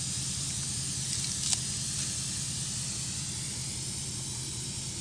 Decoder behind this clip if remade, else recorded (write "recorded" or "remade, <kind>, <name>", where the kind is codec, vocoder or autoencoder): recorded